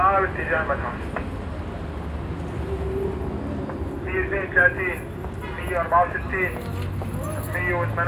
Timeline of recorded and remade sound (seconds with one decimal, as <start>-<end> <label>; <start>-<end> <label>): 0.0-8.1 recorded